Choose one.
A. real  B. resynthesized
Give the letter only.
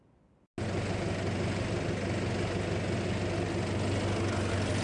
A